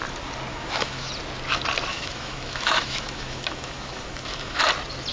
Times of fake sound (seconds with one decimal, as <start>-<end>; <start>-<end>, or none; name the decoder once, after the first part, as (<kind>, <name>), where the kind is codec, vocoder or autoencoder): 0.5-1.1 (autoencoder, DAC-VAE); 1.9-4.6